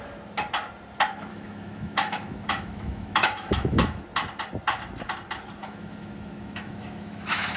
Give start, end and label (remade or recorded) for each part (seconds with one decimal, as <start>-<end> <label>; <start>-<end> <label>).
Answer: 0.0-1.3 recorded; 1.3-4.0 remade; 4.0-5.6 recorded; 5.6-7.6 remade